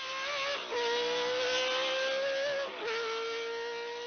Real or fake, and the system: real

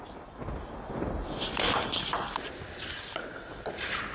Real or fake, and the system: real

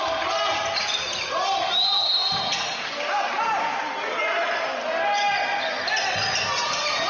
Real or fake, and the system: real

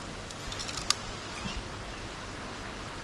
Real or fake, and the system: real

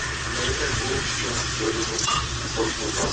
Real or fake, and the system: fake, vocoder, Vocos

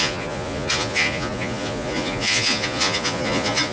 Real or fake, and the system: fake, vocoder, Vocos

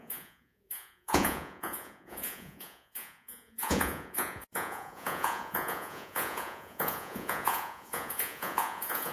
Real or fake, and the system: fake, vocoder, Vocos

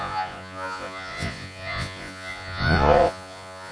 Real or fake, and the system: fake, vocoder, Vocos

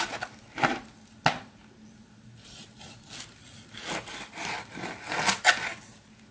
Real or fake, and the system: real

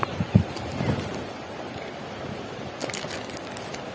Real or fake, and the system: real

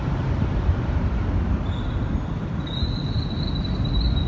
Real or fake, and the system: real